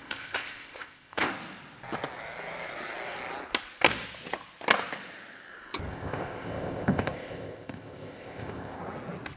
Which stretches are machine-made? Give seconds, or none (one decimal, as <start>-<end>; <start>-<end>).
0.0-1.3; 5.9-8.8